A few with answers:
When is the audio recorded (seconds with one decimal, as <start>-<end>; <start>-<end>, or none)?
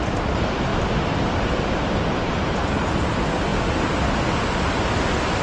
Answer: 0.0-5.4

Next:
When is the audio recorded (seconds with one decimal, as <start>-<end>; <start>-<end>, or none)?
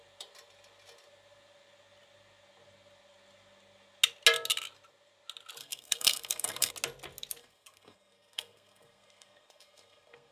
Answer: 0.0-5.6; 6.7-7.4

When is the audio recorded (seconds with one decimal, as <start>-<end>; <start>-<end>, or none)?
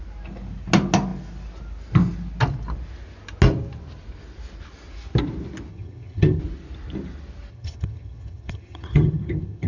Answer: 0.0-5.7; 6.4-7.5